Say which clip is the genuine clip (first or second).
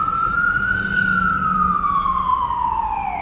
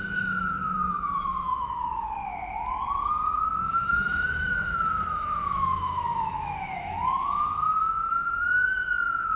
first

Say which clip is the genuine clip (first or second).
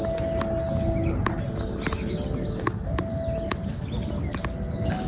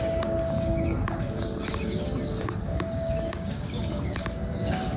first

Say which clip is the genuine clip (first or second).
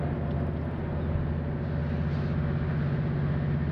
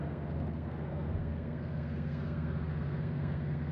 first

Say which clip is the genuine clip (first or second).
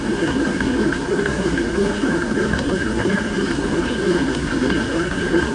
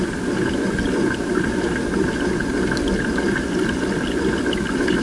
second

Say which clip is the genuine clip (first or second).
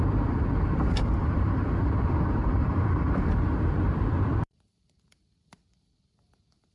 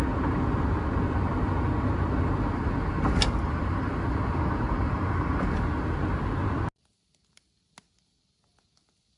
second